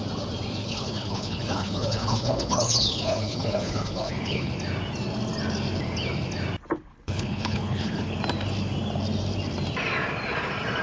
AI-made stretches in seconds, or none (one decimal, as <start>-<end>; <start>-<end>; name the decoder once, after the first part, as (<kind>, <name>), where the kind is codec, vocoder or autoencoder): 0.6-4.5 (codec, HILCodec); 6.9-8.1